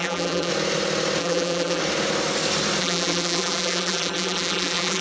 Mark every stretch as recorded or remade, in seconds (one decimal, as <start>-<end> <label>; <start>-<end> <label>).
0.0-0.5 remade; 0.5-1.2 recorded; 1.2-1.8 remade; 1.8-2.8 recorded; 2.8-5.0 remade